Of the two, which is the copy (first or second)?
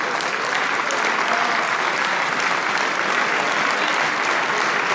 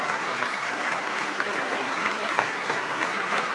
second